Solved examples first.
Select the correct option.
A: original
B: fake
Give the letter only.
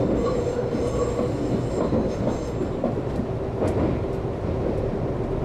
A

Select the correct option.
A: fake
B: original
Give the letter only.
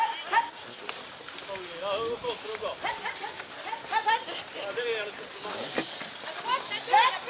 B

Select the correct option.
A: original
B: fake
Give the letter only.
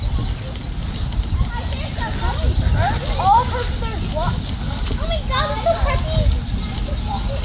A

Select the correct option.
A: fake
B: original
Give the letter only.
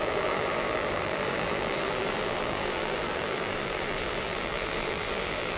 A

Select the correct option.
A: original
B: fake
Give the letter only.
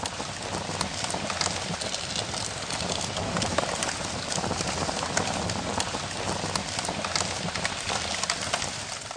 A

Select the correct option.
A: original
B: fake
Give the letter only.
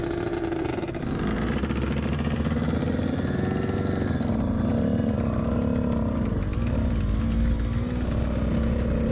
A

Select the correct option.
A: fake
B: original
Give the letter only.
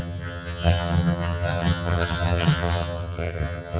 A